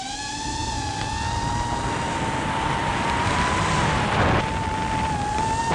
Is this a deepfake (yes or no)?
no